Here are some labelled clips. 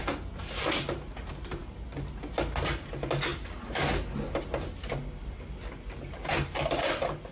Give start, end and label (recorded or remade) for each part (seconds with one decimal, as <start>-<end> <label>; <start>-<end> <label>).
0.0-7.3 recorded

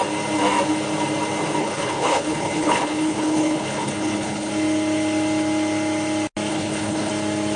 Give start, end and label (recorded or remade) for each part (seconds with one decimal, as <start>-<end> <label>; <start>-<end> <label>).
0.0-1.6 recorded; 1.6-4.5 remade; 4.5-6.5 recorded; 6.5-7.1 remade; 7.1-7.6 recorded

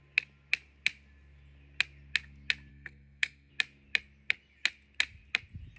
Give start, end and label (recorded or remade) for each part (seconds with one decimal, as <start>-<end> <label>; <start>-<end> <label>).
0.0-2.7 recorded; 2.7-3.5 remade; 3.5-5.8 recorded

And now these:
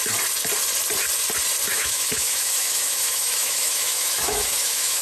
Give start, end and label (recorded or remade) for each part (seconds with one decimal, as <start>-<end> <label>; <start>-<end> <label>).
0.0-1.7 recorded; 1.7-5.0 remade

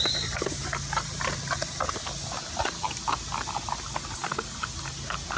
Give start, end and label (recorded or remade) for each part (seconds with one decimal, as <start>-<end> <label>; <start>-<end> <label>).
0.0-5.4 recorded

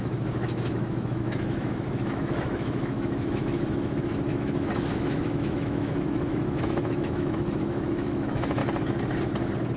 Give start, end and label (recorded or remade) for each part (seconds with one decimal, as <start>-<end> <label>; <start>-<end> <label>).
0.0-8.6 remade; 8.6-9.8 recorded

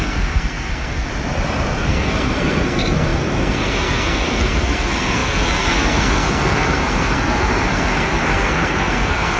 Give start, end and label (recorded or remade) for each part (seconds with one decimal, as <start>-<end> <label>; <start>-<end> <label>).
0.0-1.1 remade; 1.1-1.9 recorded; 1.9-9.4 remade